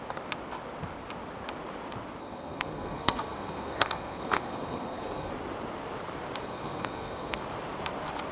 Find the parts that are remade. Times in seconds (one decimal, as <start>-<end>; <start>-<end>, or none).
2.2-5.3; 6.4-7.4